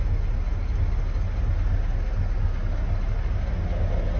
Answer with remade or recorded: recorded